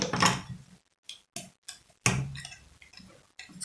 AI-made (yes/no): no